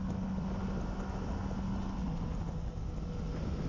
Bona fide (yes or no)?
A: yes